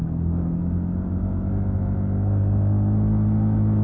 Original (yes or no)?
yes